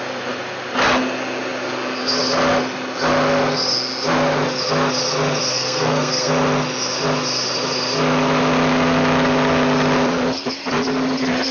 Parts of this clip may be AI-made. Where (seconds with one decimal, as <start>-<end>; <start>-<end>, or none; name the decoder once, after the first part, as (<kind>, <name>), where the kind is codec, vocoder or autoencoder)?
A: 5.5-6.3 (codec, SNAC)